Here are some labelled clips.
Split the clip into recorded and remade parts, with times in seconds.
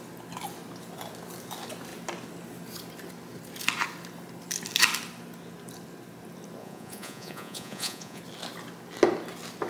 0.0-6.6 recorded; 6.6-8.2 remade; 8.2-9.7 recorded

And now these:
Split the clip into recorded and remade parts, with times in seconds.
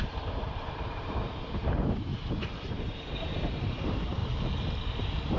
0.0-2.1 remade; 2.1-2.7 recorded; 2.7-4.2 remade; 4.2-5.0 recorded; 5.0-5.4 remade